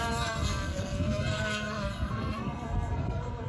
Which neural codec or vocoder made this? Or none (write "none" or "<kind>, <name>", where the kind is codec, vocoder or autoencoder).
codec, SNAC